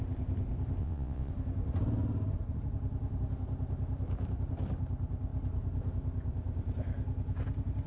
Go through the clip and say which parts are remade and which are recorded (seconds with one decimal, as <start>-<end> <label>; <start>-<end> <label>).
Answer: 0.0-0.8 recorded; 0.8-1.3 remade; 1.3-7.9 recorded